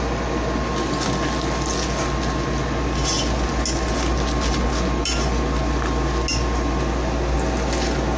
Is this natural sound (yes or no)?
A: yes